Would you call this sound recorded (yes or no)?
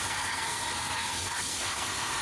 no